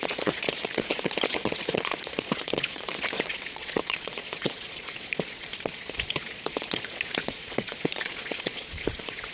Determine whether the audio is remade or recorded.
remade